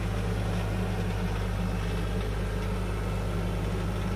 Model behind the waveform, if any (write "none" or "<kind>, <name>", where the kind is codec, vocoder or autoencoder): none